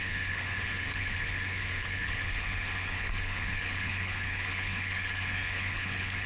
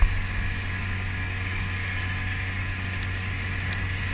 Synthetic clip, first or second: first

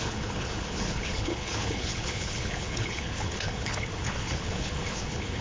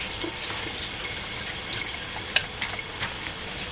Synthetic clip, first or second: first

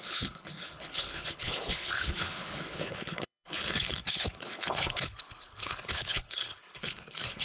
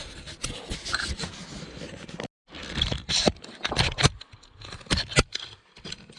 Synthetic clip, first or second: first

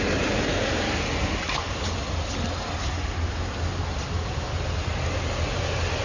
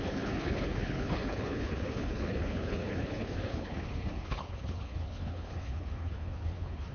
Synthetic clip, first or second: second